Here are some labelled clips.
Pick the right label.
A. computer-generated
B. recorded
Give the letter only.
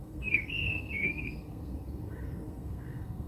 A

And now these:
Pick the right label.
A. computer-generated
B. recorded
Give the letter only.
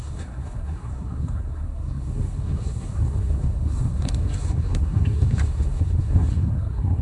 A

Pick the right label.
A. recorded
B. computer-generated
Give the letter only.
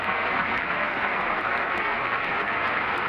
B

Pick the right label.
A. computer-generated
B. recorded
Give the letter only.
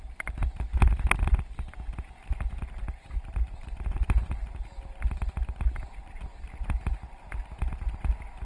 B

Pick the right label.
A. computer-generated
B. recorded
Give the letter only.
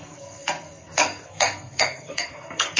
A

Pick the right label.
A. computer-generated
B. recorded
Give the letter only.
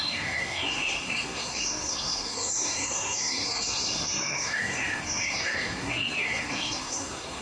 A